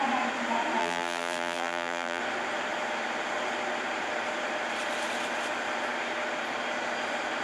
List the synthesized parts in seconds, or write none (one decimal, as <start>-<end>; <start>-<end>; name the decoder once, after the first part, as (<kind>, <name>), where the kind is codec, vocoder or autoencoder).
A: 0.8-2.2 (vocoder, BigVGAN v2)